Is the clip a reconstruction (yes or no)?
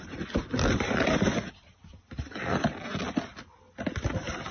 no